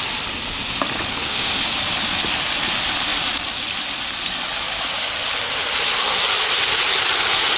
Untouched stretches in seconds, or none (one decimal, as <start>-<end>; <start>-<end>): 0.0-1.1; 1.6-7.6